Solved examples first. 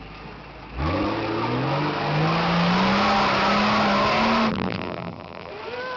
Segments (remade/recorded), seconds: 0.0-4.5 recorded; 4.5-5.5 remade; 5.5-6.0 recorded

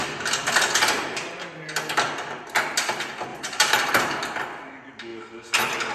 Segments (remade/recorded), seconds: 0.0-3.3 recorded; 3.3-4.2 remade; 4.2-5.9 recorded

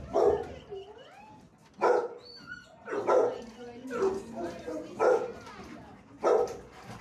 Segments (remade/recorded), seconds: 0.0-7.0 recorded

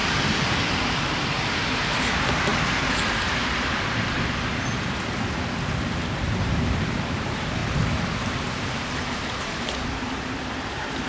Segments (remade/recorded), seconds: 0.0-0.9 recorded; 0.9-2.5 remade; 2.5-6.3 recorded; 6.3-11.1 remade

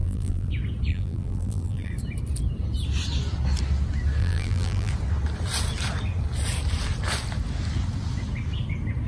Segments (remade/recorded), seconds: 0.0-0.5 remade; 0.5-0.9 recorded; 0.9-1.9 remade; 1.9-4.2 recorded; 4.2-4.9 remade; 4.9-9.1 recorded

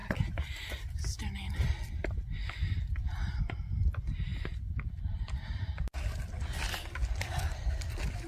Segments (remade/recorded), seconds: 0.0-8.3 recorded

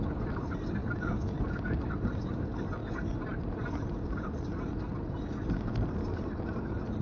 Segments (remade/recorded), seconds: 0.0-2.8 recorded; 2.8-4.7 remade; 4.7-7.0 recorded